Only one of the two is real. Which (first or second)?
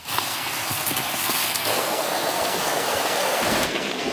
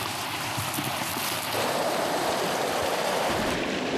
second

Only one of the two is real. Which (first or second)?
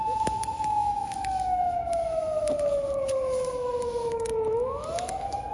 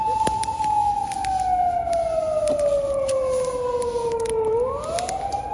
second